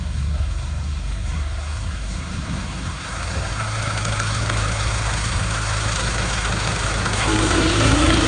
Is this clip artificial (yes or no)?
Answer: yes